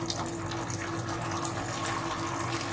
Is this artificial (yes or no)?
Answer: no